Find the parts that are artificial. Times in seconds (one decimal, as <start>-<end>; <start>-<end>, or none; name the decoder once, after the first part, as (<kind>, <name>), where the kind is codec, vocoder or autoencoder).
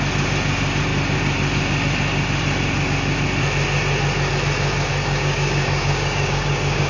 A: 4.9-6.9 (codec, DAC)